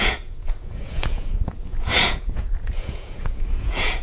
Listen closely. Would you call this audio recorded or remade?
remade